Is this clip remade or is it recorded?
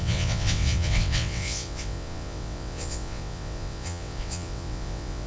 remade